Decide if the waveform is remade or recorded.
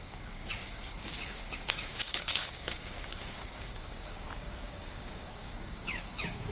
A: remade